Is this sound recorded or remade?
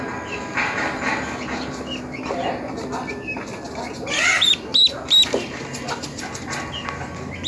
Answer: recorded